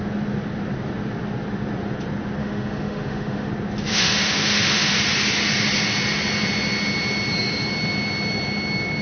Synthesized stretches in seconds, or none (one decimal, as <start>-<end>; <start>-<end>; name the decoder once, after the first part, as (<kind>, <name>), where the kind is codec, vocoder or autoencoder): 2.4-3.5 (autoencoder, DAC-VAE); 3.9-4.9